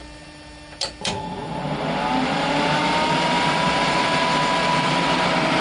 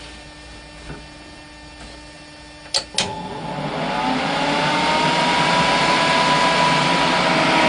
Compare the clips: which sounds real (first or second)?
second